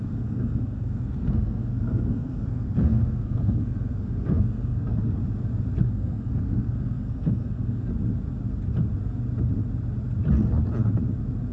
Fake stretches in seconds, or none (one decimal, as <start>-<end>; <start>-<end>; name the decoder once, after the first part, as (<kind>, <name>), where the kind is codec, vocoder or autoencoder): 0.0-5.2 (codec, SNAC); 5.8-7.9